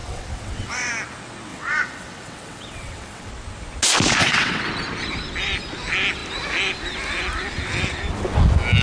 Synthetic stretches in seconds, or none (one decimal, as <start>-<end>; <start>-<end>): 0.0-0.9; 1.5-3.3; 4.2-4.7